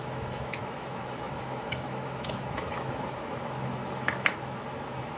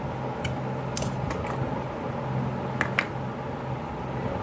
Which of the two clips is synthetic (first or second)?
first